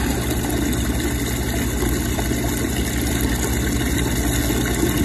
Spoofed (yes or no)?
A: no